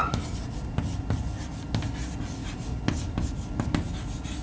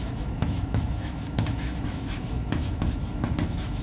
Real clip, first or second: first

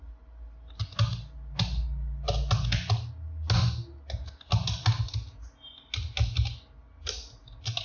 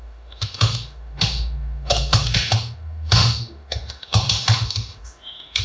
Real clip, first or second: first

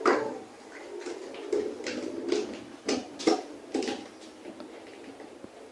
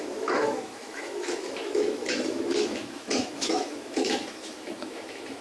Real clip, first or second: first